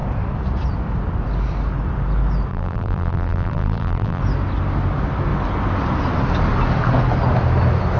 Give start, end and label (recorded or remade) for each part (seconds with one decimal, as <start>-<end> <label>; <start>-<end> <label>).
0.0-2.5 recorded; 2.5-4.2 remade; 4.2-8.0 recorded